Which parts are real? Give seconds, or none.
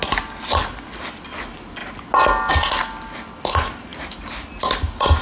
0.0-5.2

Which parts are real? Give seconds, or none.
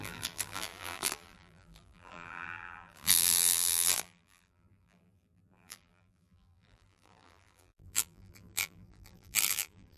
none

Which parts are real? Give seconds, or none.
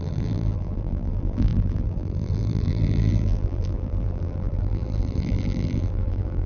none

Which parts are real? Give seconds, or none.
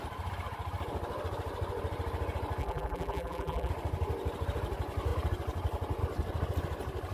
0.0-2.6; 3.7-7.1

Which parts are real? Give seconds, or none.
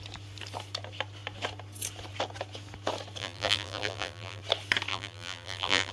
0.0-3.2; 4.4-4.9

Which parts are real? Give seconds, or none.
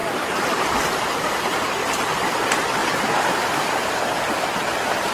1.2-2.8